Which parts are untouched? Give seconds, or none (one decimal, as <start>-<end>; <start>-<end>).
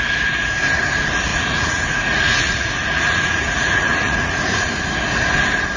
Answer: 0.0-1.3; 4.8-5.8